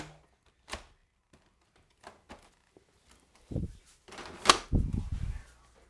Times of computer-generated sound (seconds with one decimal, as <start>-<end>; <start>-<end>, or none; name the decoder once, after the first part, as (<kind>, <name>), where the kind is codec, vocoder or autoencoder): none